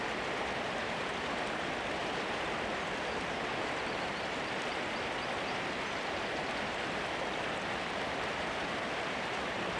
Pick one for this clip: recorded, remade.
remade